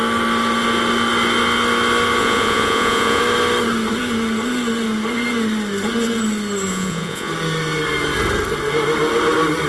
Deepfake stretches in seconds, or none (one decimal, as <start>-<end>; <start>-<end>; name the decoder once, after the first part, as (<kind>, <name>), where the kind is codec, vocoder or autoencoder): 2.2-3.2 (vocoder, Vocos); 6.7-7.3